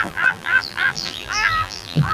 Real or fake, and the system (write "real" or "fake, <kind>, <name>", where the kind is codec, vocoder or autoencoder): fake, vocoder, BigVGAN v2